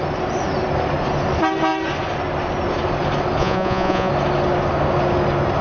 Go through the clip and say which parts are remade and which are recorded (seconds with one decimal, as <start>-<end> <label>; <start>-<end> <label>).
0.0-3.4 recorded; 3.4-4.1 remade; 4.1-5.6 recorded